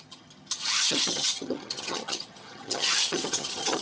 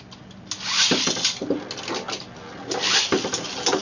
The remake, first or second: first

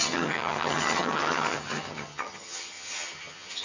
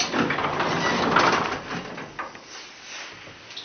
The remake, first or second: first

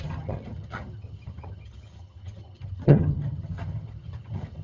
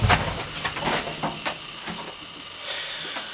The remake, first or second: first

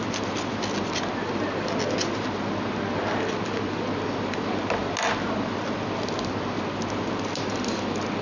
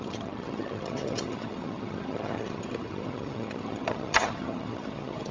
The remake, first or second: second